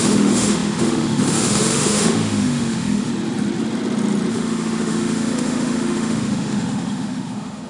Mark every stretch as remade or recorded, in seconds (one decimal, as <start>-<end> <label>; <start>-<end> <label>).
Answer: 0.0-3.1 remade; 3.1-4.3 recorded; 4.3-7.7 remade

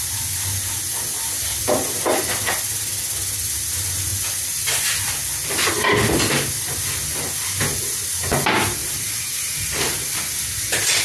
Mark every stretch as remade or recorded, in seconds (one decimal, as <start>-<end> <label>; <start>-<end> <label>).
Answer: 0.0-8.8 recorded; 8.8-9.8 remade; 9.8-11.0 recorded

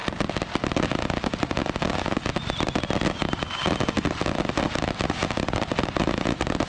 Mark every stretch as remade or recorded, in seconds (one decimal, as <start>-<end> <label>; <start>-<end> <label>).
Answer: 0.0-6.7 recorded

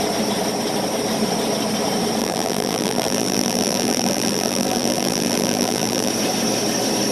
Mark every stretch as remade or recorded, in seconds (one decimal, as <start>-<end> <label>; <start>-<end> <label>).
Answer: 0.0-2.2 recorded; 2.2-6.1 remade; 6.1-7.1 recorded

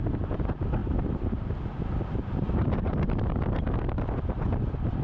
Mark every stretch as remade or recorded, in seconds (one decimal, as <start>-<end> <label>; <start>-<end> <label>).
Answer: 0.0-0.8 recorded; 0.8-3.2 remade; 3.2-5.0 recorded

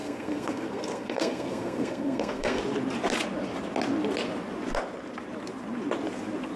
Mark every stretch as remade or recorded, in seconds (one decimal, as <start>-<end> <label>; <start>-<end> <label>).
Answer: 0.0-2.6 remade; 2.6-6.6 recorded